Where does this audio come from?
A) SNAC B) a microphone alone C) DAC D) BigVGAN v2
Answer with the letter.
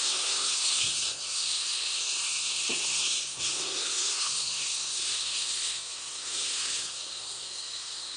A